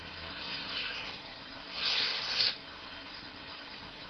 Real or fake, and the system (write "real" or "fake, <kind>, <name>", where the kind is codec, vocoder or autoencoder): fake, codec, SNAC